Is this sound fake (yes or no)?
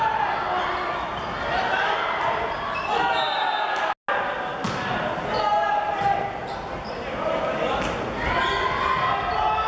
no